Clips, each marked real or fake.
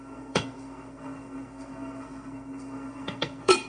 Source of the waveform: fake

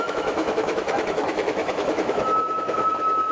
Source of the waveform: fake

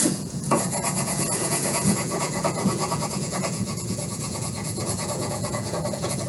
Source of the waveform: fake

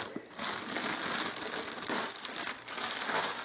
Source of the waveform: real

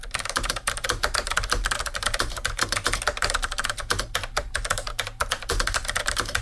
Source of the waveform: fake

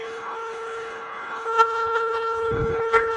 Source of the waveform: fake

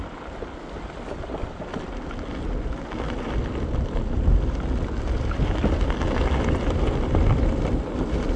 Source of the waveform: real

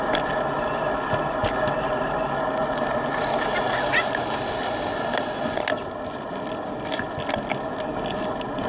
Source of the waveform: real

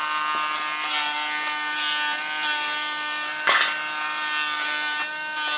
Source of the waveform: real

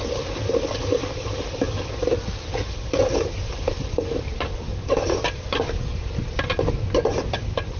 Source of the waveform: fake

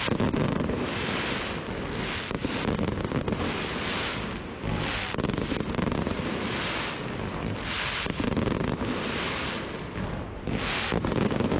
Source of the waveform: real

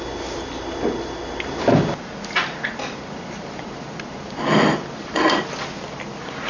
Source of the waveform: real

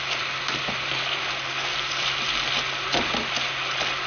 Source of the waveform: real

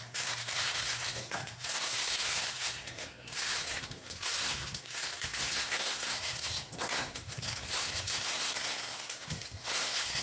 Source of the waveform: fake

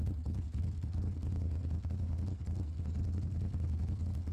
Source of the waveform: fake